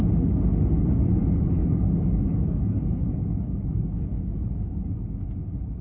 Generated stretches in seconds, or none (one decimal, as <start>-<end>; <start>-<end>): 1.6-5.1